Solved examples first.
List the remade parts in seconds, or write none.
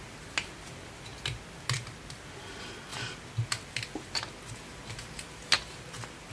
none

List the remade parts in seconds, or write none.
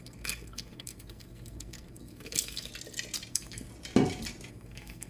0.0-2.7 (codec, SNAC); 3.3-3.7; 4.5-5.1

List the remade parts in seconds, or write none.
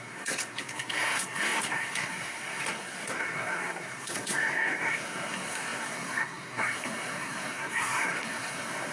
0.0-8.9 (codec, SNAC)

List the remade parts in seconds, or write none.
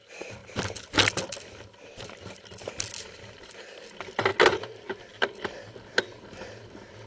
none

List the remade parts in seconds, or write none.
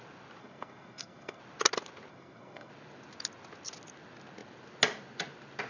0.4-1.4 (codec, SNAC); 2.1-2.7